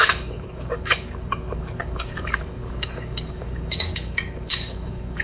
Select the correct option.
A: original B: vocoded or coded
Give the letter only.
B